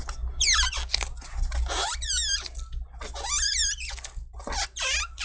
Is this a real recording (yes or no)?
yes